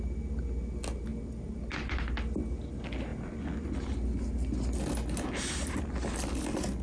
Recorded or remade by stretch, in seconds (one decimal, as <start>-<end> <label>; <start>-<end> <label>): 0.0-6.8 recorded

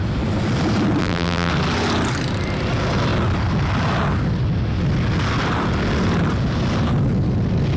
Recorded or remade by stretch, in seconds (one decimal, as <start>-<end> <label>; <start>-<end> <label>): 0.0-1.0 recorded; 1.0-1.5 remade; 1.5-7.8 recorded

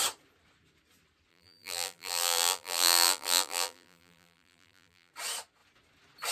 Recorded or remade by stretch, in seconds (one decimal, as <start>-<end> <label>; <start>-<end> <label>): 0.0-1.3 recorded; 1.3-5.1 remade; 5.1-6.3 recorded

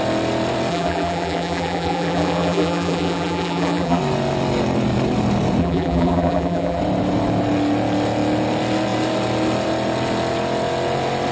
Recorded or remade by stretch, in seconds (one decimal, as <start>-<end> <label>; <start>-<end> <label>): 0.0-0.7 recorded; 0.7-4.0 remade; 4.0-5.6 recorded; 5.6-6.8 remade; 6.8-11.3 recorded

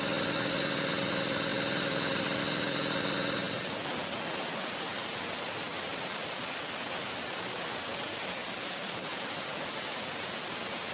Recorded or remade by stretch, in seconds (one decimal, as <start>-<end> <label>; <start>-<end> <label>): 0.0-1.5 recorded; 1.5-2.4 remade; 2.4-10.9 recorded